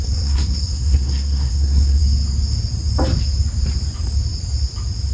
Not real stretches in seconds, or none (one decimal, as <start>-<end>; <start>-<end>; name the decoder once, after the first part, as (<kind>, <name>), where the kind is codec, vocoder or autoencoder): 0.0-2.0 (codec, SNAC)